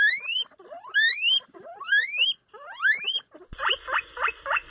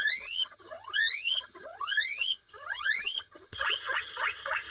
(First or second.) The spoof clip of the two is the second